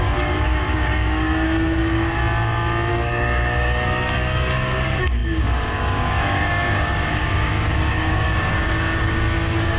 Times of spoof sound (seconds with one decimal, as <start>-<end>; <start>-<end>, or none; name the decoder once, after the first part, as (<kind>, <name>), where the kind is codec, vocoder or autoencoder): 0.0-2.2 (codec, DAC); 2.9-9.8